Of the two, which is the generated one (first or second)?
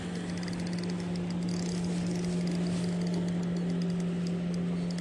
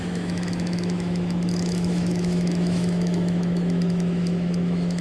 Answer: second